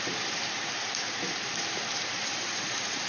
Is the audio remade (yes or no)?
yes